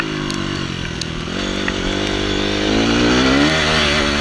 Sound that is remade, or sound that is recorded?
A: recorded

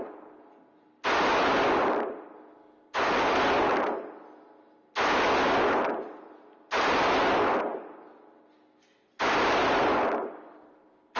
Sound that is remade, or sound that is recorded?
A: recorded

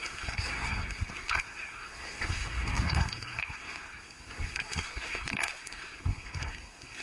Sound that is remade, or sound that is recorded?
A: remade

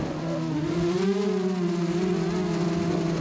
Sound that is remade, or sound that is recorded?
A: recorded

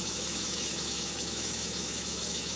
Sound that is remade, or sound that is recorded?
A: remade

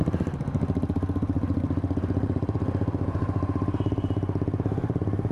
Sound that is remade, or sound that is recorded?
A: recorded